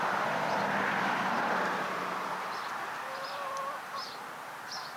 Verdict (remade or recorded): recorded